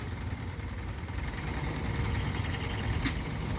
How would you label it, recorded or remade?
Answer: recorded